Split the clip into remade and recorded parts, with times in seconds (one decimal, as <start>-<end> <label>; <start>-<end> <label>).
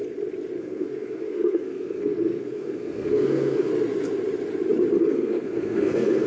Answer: 0.0-0.6 recorded; 0.6-3.7 remade; 3.7-5.0 recorded; 5.0-6.3 remade